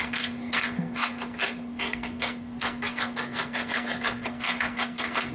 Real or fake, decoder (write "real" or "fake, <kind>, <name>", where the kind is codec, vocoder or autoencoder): fake, codec, SNAC